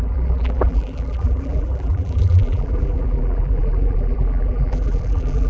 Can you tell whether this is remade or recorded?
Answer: remade